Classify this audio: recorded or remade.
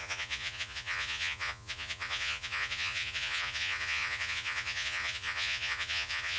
remade